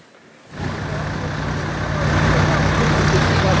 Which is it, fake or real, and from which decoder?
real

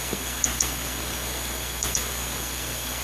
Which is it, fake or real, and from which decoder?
fake, codec, SNAC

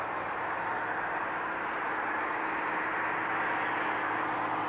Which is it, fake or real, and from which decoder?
real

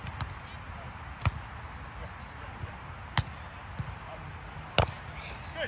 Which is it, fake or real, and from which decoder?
real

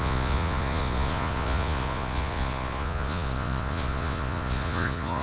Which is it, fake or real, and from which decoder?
fake, vocoder, Vocos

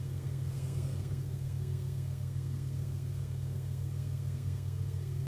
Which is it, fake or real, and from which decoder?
fake, codec, SNAC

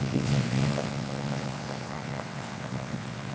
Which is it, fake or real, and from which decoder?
fake, vocoder, WaveNeXt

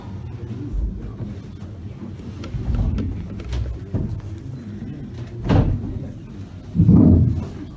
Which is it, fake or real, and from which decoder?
real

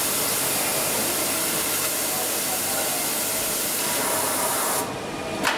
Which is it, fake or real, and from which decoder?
real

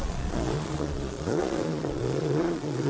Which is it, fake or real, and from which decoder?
fake, vocoder, Vocos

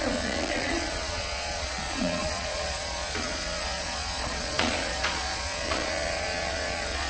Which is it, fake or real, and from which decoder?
fake, vocoder, Vocos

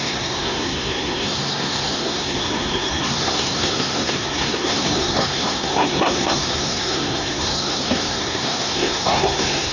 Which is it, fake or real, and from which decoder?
fake, codec, SNAC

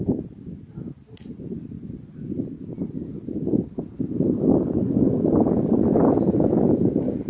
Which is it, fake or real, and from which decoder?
real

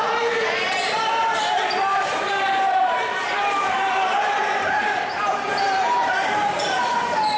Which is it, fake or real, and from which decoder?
fake, vocoder, BigVGAN v2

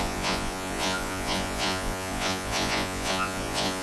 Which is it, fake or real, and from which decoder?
fake, vocoder, Vocos